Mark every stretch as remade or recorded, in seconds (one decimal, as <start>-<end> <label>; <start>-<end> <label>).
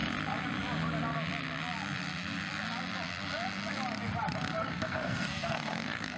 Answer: 0.0-4.6 recorded; 4.6-6.2 remade